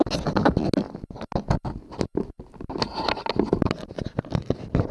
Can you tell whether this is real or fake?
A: real